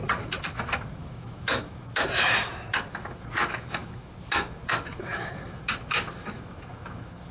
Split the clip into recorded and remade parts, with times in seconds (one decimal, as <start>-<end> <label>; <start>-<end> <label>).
0.0-7.3 remade